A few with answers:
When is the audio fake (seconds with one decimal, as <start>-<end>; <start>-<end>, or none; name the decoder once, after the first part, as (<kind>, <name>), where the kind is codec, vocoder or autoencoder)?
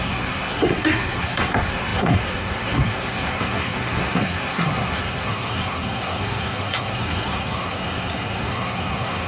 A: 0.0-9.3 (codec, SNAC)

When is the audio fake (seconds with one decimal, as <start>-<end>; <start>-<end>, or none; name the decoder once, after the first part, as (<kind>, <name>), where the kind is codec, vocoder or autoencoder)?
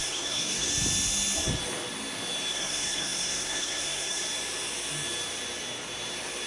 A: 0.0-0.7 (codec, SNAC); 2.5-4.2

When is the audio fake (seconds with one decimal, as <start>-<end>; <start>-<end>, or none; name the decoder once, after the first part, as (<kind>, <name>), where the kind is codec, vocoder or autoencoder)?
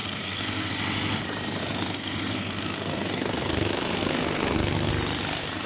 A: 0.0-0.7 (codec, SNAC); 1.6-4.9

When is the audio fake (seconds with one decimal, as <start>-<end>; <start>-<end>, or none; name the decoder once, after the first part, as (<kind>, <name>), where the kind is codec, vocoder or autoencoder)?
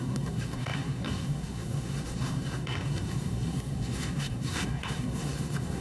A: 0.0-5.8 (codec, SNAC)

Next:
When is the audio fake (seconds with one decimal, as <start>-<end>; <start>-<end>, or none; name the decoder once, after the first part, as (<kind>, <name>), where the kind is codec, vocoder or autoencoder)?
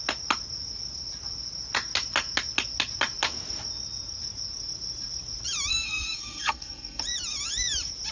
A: 5.7-7.0 (codec, SNAC)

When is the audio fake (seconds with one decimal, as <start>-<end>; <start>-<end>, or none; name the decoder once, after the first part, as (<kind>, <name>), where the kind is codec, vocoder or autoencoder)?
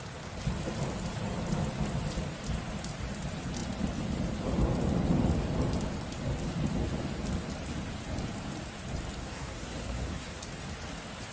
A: 9.2-10.4 (codec, SNAC)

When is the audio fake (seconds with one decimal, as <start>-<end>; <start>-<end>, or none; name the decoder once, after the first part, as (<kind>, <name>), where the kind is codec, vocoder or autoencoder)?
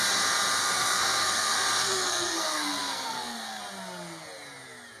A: 0.6-3.6 (codec, SNAC)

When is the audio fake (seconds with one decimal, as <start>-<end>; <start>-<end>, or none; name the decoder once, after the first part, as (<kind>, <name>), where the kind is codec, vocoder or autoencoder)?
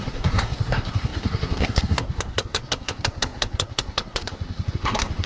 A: 0.0-5.3 (codec, SNAC)